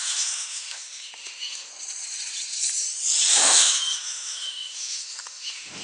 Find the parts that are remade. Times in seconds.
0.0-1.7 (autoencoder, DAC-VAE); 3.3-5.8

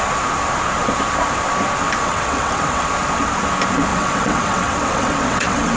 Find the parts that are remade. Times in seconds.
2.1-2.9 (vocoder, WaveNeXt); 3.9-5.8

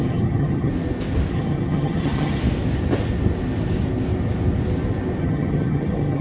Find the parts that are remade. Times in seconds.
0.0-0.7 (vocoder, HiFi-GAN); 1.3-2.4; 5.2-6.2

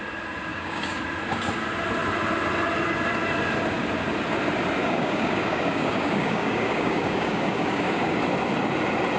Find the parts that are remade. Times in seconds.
0.5-1.0 (codec, DAC); 4.8-8.2

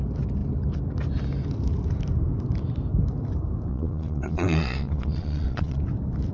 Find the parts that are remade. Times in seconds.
3.7-5.8 (vocoder, Vocos)

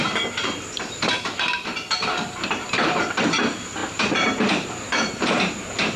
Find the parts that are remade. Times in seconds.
0.0-6.0 (vocoder, BigVGAN v2)

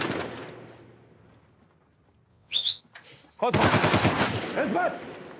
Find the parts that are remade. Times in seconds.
2.3-2.8 (vocoder, WaveNeXt)